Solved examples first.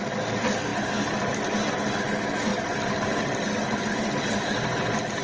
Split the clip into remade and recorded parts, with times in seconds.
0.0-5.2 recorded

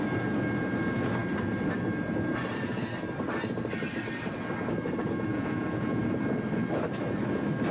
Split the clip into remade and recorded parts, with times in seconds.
0.0-5.3 recorded; 5.3-6.0 remade; 6.0-7.7 recorded